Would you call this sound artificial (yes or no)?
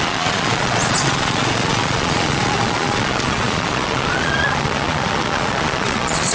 yes